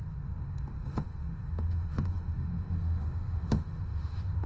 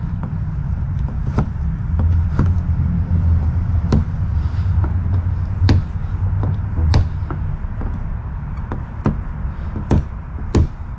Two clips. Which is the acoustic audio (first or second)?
second